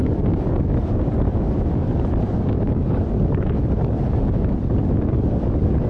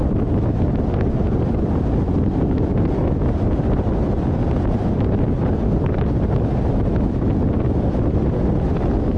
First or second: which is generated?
first